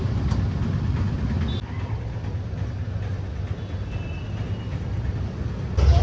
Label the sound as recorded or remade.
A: recorded